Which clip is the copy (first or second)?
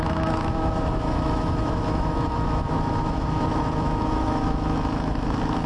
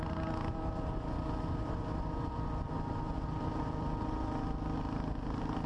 first